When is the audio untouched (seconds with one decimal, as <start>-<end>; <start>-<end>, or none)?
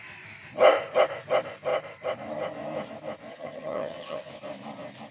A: 0.0-3.3; 4.3-5.1